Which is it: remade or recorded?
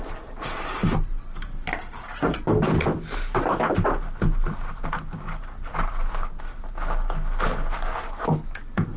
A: recorded